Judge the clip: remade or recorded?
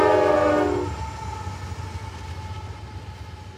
recorded